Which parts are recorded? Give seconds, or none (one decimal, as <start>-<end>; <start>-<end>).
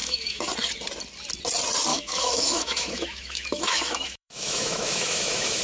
0.5-1.9